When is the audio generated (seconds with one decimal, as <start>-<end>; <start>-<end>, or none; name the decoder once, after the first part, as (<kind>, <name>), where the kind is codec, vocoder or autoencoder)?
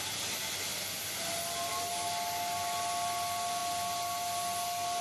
none